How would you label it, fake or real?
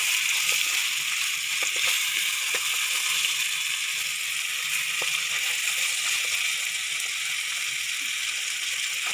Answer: real